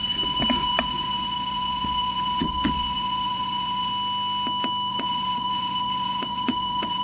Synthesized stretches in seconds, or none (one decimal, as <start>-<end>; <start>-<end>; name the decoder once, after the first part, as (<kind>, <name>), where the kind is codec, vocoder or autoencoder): 0.0-3.9 (vocoder, Vocos); 4.9-7.0